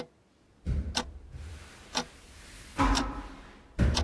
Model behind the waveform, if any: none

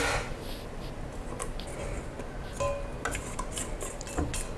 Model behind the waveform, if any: none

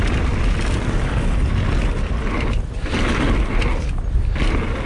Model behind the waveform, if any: none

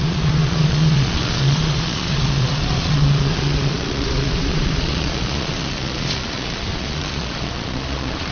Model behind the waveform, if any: vocoder, Vocos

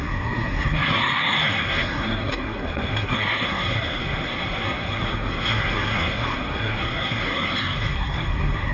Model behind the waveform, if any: codec, SNAC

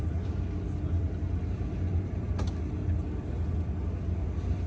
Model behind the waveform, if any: none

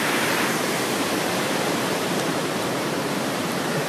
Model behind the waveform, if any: vocoder, BigVGAN v2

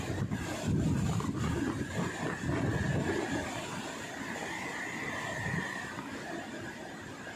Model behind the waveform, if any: none